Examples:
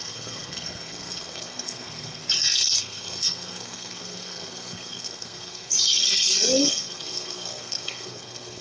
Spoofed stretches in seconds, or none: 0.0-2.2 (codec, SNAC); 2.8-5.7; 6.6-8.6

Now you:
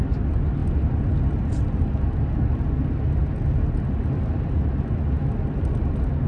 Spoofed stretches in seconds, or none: none

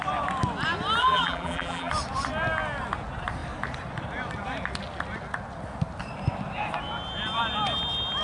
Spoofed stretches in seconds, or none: 1.0-1.9 (vocoder, BigVGAN v2)